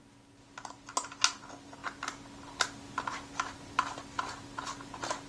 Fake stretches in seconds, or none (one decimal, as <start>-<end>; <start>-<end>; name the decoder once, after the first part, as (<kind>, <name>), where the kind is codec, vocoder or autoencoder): none